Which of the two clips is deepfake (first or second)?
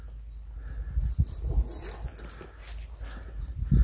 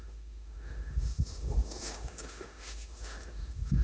second